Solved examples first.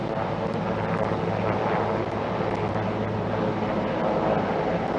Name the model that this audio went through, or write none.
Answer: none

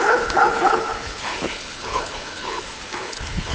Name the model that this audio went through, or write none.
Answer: codec, HILCodec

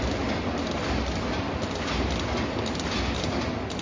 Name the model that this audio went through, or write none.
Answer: none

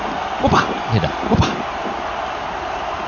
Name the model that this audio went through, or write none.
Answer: vocoder, BigVGAN v2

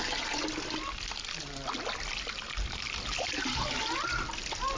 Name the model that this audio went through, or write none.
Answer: none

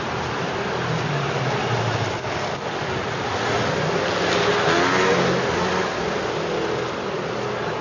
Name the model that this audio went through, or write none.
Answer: none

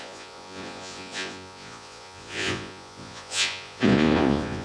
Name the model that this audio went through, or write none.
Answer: vocoder, Vocos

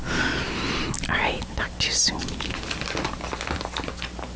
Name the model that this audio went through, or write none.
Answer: none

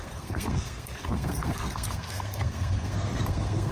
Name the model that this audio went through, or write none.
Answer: codec, SNAC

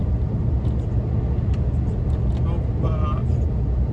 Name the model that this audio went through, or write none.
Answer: none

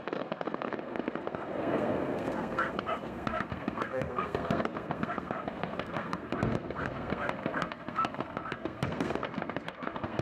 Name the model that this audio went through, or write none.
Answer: codec, SNAC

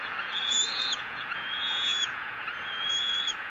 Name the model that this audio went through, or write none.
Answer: vocoder, Vocos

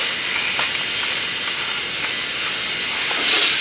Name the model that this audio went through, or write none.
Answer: none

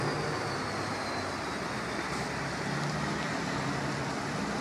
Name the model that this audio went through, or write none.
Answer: none